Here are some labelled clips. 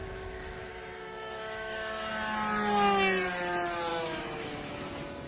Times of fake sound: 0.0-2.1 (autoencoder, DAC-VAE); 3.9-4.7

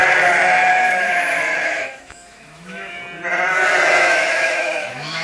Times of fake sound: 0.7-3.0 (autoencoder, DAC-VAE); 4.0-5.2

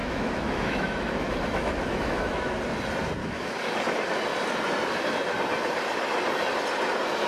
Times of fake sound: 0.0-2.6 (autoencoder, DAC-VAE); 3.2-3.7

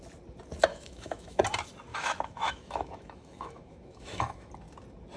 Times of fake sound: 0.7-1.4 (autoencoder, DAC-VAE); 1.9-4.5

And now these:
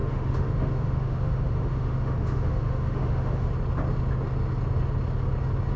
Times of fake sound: 0.0-3.5 (autoencoder, DAC-VAE)

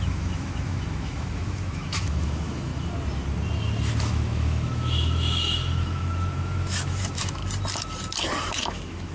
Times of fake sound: 0.0-2.7 (autoencoder, DAC-VAE); 4.0-7.4; 8.5-9.1

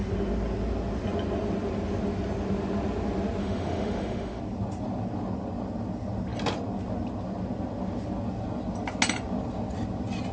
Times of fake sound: 3.4-4.4 (autoencoder, DAC-VAE)

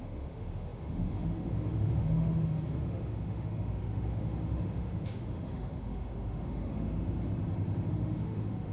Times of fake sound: 0.0-7.3 (autoencoder, DAC-VAE); 7.9-8.7